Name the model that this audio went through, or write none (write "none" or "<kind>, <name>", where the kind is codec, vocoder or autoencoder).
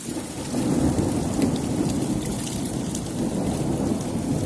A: none